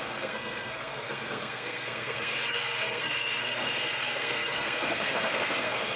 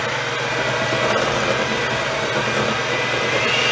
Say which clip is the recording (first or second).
second